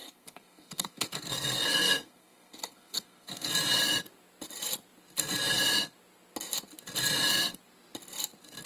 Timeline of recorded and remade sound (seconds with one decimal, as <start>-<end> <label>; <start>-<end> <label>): 0.0-3.5 remade; 3.5-8.7 recorded